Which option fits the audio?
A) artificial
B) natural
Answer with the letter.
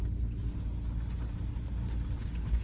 B